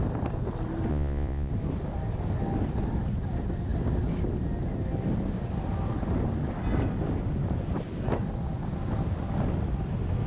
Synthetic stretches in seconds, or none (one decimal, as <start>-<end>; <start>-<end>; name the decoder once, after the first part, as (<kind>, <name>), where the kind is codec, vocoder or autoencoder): 0.9-1.5 (vocoder, Vocos)